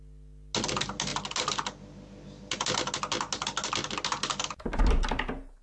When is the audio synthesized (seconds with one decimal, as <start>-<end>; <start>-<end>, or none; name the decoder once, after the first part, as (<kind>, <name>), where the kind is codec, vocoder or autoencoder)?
none